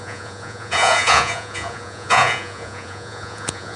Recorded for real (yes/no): no